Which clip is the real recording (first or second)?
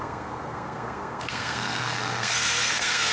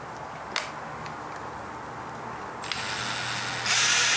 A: second